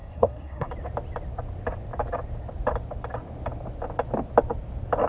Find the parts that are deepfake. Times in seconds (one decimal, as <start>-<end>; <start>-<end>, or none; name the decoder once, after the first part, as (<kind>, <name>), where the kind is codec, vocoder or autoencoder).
0.0-0.7 (codec, SNAC)